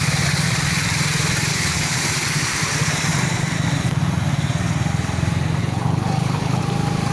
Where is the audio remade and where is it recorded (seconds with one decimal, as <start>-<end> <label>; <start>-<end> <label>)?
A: 0.0-1.5 recorded; 1.5-2.0 remade; 2.0-5.6 recorded; 5.6-6.6 remade; 6.6-7.1 recorded